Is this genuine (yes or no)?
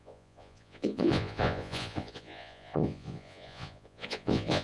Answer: no